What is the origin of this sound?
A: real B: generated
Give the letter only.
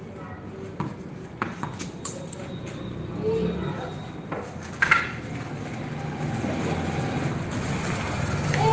A